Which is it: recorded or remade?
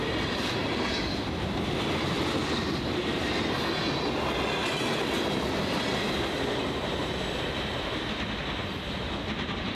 recorded